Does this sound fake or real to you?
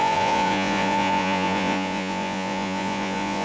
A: fake